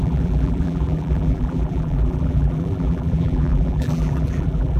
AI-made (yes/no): yes